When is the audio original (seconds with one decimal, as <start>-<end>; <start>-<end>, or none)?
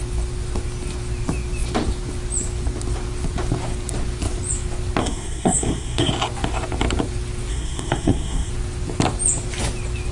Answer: 0.0-5.0; 6.1-7.5; 8.5-10.1